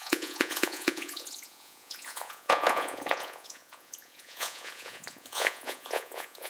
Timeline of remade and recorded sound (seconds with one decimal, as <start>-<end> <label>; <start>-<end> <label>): 0.0-6.5 remade